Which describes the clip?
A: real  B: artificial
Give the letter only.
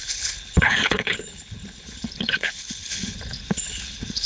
B